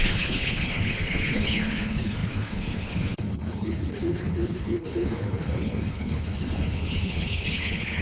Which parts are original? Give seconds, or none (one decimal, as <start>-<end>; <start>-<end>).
none